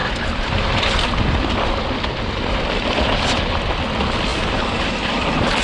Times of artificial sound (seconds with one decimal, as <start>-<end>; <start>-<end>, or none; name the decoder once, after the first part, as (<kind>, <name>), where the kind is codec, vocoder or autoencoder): 0.0-3.4 (vocoder, BigVGAN v2)